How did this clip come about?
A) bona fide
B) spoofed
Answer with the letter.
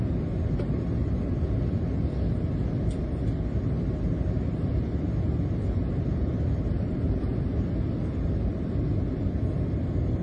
A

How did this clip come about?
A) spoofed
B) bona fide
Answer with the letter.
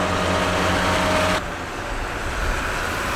B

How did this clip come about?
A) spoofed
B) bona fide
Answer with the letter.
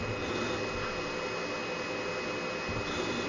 B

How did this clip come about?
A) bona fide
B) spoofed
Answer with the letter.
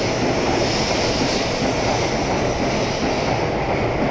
A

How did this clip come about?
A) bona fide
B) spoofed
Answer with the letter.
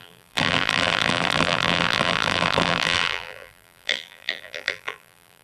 B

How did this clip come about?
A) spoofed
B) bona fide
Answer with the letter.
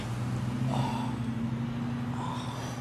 B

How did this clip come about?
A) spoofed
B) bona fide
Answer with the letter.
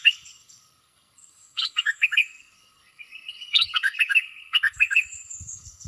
A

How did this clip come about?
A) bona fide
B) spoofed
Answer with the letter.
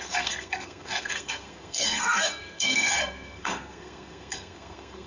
B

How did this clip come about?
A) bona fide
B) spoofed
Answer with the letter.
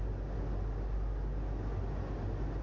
A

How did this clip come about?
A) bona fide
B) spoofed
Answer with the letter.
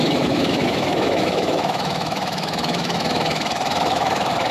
B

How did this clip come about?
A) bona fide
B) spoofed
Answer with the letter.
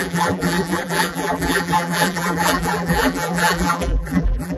B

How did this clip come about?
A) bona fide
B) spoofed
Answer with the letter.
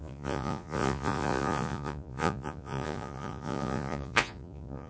B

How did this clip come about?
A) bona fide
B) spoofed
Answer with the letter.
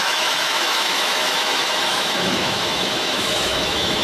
B